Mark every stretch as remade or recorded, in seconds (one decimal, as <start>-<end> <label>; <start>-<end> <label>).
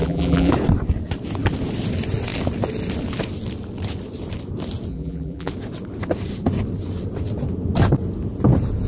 0.0-0.5 remade; 0.5-4.9 recorded; 4.9-5.5 remade; 5.5-8.9 recorded